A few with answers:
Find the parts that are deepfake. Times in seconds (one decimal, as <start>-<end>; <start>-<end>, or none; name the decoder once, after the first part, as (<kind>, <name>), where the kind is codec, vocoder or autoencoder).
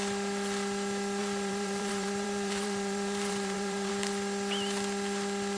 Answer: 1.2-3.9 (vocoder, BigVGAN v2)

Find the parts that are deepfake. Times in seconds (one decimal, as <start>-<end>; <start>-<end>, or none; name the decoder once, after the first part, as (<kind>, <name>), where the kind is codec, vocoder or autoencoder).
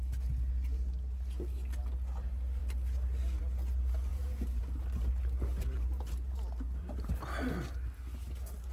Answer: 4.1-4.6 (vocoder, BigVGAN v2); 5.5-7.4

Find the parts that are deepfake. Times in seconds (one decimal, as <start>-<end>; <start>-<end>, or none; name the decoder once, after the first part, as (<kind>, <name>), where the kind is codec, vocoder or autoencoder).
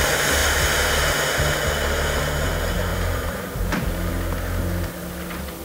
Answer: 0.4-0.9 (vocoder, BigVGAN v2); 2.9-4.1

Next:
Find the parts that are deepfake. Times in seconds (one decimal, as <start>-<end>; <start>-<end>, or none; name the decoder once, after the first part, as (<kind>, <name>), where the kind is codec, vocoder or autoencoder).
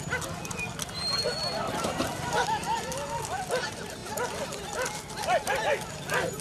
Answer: 1.4-2.0 (vocoder, BigVGAN v2); 4.0-4.6